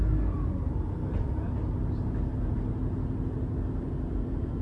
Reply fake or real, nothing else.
real